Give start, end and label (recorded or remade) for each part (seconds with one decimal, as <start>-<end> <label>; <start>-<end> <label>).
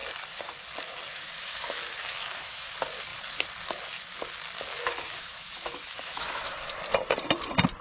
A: 0.0-1.1 recorded; 1.1-2.7 remade; 2.7-4.7 recorded; 4.7-6.5 remade; 6.5-7.8 recorded